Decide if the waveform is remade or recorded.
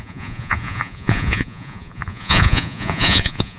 remade